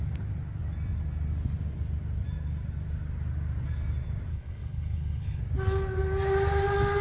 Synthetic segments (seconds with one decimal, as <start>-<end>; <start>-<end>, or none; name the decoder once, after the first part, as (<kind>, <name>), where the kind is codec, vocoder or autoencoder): 4.3-5.4 (codec, HILCodec)